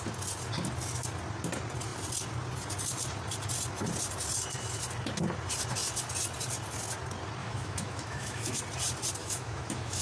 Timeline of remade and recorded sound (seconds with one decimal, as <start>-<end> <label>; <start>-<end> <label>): 0.0-7.4 recorded; 7.4-8.6 remade; 8.6-9.2 recorded; 9.2-10.0 remade